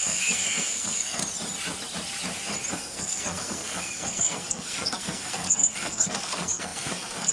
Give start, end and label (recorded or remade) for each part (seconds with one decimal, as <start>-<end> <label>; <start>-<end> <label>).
0.0-1.2 remade; 1.2-2.7 recorded; 2.7-7.3 remade